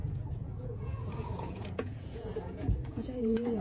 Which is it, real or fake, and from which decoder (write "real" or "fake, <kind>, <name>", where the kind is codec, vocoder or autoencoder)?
fake, vocoder, Vocos